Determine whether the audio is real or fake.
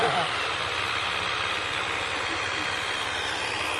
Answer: fake